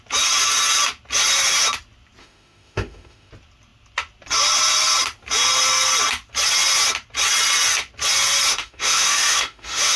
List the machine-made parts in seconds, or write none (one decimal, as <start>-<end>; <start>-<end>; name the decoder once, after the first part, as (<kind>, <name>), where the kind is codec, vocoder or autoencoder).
2.2-3.3 (autoencoder, DAC-VAE); 8.5-10.0

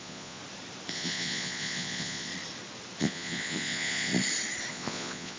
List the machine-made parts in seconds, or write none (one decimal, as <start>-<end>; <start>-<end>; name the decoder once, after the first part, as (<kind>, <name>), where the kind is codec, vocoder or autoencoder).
0.0-0.4 (vocoder, Vocos); 0.9-2.3; 3.0-4.1; 4.7-5.4

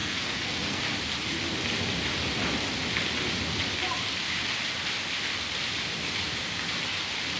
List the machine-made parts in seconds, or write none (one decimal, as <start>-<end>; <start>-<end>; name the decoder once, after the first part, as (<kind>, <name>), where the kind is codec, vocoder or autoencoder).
0.0-0.8 (codec, SNAC)

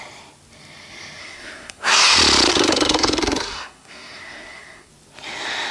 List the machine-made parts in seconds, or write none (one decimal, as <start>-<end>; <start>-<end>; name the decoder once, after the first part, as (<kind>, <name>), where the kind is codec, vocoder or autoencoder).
1.2-2.0 (codec, SNAC); 2.5-4.9

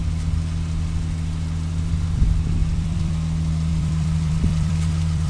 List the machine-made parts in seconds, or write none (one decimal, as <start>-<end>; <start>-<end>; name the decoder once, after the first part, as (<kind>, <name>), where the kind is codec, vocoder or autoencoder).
2.6-3.1 (vocoder, BigVGAN v2); 3.7-5.3

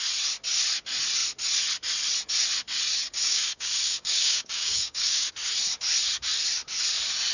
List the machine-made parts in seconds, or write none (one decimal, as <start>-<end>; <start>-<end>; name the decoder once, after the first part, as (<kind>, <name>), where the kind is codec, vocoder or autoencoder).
2.9-5.3 (codec, DAC)

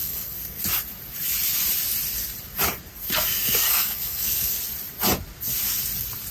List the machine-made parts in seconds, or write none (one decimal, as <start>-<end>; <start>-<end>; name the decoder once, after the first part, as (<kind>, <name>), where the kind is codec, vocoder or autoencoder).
0.0-0.6 (codec, SNAC); 2.9-4.6

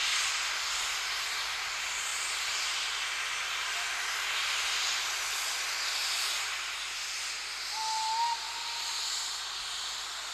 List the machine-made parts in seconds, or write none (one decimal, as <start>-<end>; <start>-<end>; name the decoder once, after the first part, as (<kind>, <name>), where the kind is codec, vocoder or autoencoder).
none